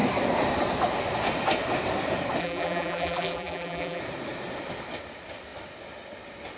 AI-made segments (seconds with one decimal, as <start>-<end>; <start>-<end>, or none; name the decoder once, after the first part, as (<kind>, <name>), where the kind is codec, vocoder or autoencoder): 2.4-4.0 (vocoder, BigVGAN v2)